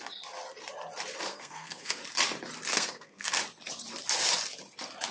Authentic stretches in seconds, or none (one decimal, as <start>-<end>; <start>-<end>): 0.0-1.3; 2.0-2.7; 3.4-5.1